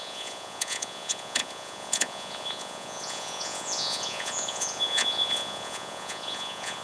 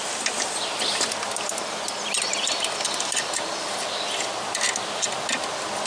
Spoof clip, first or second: first